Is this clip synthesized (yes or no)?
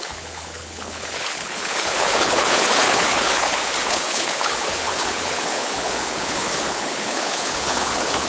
yes